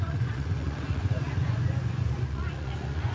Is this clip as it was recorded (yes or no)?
no